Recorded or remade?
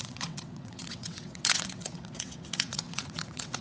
remade